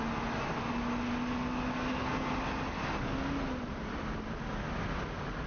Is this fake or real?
real